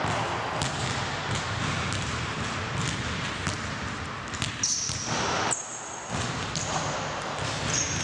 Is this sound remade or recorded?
recorded